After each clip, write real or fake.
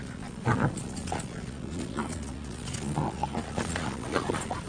fake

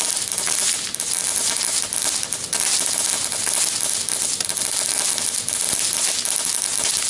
real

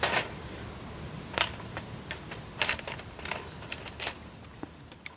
real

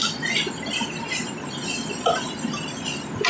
real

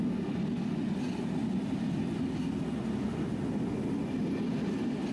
real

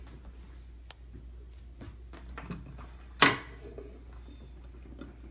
real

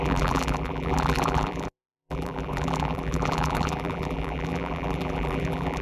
fake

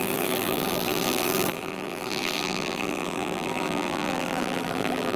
fake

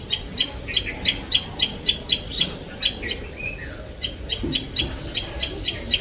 real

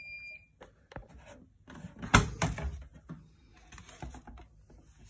real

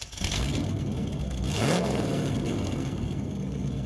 fake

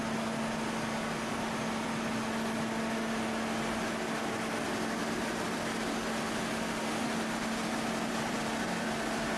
real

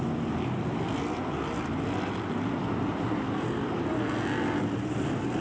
real